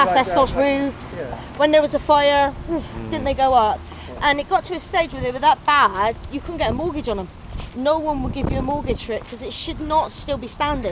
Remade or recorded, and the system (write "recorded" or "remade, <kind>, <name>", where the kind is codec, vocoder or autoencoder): recorded